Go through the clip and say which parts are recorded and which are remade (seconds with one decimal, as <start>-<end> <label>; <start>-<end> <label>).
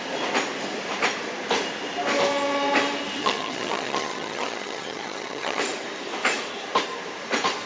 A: 0.0-3.2 recorded; 3.2-5.6 remade; 5.6-7.7 recorded